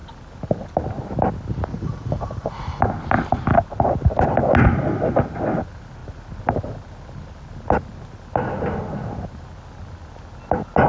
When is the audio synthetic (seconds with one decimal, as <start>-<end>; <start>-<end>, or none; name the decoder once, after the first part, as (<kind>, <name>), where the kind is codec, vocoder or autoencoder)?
1.7-2.8 (vocoder, Vocos)